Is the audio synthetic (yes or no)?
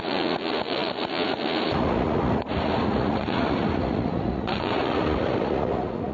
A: yes